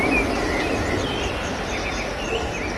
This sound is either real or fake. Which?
real